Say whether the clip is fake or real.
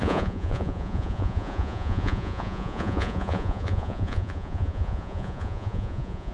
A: fake